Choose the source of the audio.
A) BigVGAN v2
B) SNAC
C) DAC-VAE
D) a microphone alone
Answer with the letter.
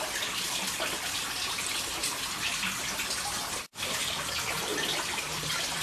D